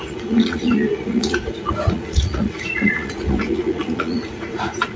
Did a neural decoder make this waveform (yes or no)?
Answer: yes